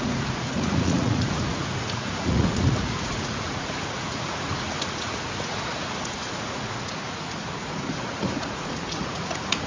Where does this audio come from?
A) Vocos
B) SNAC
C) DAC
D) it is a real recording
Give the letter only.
A